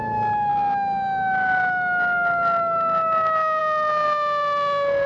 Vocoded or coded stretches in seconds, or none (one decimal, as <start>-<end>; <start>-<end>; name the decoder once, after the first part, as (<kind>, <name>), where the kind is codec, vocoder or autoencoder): none